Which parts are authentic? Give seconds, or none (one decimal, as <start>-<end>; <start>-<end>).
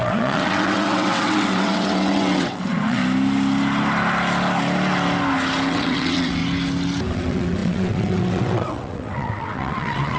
3.0-5.7; 6.4-7.1